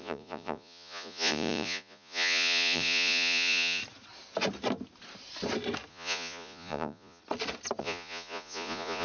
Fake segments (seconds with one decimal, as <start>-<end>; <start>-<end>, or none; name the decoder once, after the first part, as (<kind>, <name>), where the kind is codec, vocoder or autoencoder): 0.0-3.8 (vocoder, Vocos); 5.9-7.2; 7.8-9.0